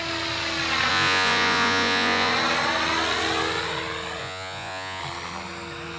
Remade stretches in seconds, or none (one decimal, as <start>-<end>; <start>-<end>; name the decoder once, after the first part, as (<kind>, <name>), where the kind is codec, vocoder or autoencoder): 0.9-2.3 (vocoder, Vocos); 4.2-5.0